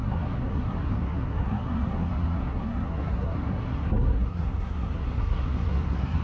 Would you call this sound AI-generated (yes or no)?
yes